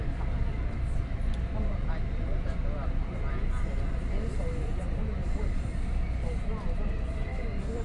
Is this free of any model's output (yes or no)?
yes